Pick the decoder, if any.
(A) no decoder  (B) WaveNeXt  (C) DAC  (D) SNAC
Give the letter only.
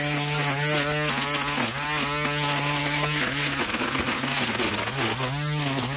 A